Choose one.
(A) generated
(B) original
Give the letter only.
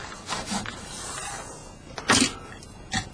B